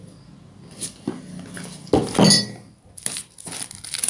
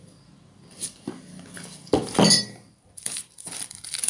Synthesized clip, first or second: second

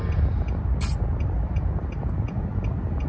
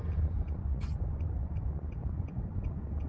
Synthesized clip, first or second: second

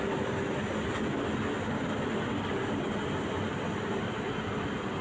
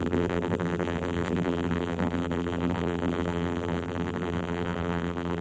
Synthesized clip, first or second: second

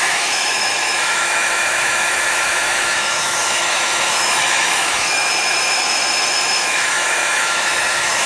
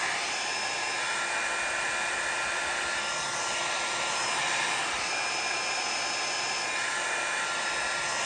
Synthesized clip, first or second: first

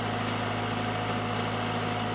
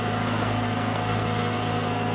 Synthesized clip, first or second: second